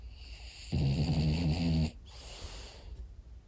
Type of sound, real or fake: real